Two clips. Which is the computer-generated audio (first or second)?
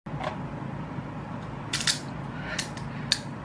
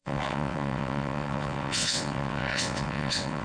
second